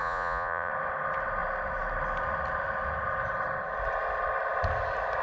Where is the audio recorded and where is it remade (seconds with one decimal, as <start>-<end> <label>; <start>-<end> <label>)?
0.0-0.7 remade; 0.7-5.2 recorded

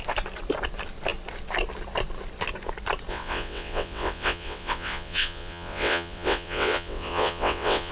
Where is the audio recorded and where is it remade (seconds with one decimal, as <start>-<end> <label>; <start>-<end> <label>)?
0.0-3.1 recorded; 3.1-7.9 remade

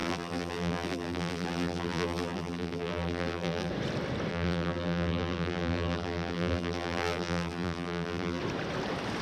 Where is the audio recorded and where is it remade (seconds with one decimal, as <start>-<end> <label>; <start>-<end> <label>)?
0.0-3.7 remade; 3.7-4.3 recorded; 4.3-8.4 remade; 8.4-9.2 recorded

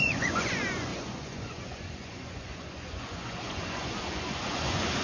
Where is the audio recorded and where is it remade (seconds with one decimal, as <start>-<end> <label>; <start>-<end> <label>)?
0.0-5.0 remade